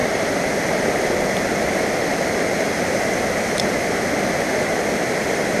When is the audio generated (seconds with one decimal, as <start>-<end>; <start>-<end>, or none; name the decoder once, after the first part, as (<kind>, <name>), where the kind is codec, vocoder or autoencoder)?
none